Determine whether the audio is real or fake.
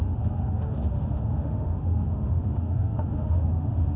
fake